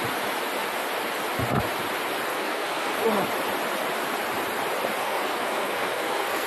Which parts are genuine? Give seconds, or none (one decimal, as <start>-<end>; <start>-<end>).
0.0-2.3; 3.0-5.0